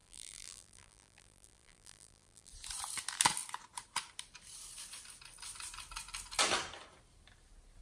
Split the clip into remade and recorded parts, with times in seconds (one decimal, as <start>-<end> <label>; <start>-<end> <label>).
0.0-2.5 remade; 2.5-7.8 recorded